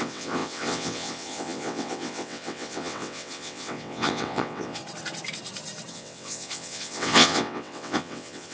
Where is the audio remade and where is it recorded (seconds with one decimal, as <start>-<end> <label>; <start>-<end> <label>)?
0.0-4.8 remade; 4.8-5.9 recorded; 5.9-8.5 remade